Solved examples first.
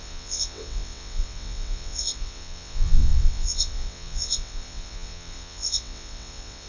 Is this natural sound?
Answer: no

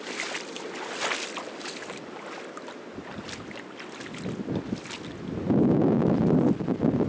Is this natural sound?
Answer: yes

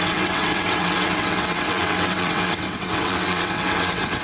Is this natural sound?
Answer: no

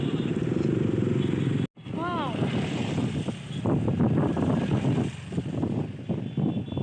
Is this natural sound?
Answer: yes